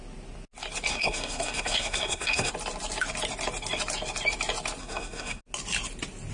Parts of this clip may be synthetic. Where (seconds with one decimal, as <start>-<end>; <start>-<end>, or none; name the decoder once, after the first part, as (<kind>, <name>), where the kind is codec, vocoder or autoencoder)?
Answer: 0.9-2.5 (codec, SNAC); 4.8-5.4